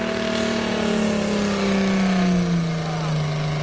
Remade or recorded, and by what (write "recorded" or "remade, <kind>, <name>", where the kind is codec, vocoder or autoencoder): recorded